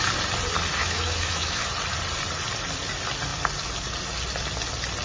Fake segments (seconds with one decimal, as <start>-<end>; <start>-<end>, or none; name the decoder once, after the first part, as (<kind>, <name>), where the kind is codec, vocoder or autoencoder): 0.8-1.6 (autoencoder, DAC-VAE)